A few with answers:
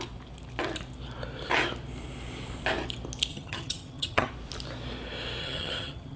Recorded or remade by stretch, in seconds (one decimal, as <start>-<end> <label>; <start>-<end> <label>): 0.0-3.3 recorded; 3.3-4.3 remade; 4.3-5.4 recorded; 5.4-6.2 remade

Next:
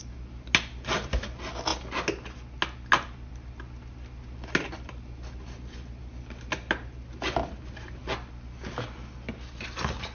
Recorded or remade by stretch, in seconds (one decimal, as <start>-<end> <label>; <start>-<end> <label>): 0.0-10.1 recorded

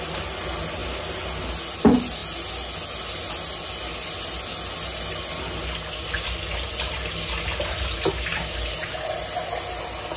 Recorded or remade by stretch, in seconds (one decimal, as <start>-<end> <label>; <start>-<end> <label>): 0.0-10.2 recorded

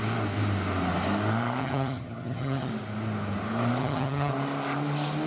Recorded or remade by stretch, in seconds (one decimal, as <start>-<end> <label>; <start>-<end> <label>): 0.0-1.6 recorded; 1.6-2.7 remade; 2.7-3.8 recorded; 3.8-4.3 remade; 4.3-5.3 recorded